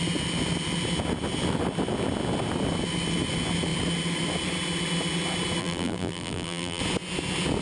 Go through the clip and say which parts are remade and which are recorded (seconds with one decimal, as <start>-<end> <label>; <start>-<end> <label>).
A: 0.0-5.6 recorded; 5.6-6.8 remade; 6.8-7.6 recorded